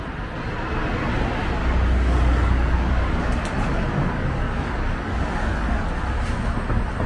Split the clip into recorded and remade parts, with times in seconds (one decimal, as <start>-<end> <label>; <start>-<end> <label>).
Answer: 0.0-1.6 recorded; 1.6-5.9 remade; 5.9-7.1 recorded